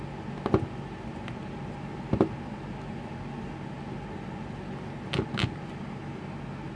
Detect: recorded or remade recorded